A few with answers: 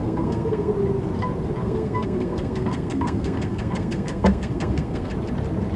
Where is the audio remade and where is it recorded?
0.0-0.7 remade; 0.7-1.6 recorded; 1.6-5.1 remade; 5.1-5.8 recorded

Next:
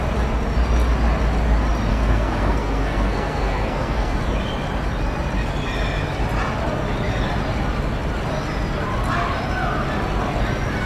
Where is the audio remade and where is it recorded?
0.0-1.9 recorded; 1.9-4.2 remade; 4.2-10.9 recorded

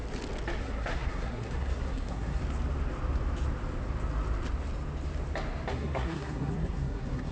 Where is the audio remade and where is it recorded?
0.0-0.6 recorded; 0.6-2.4 remade; 2.4-5.7 recorded; 5.7-7.3 remade